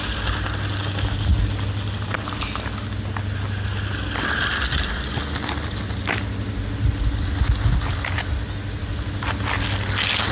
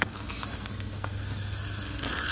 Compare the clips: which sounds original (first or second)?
first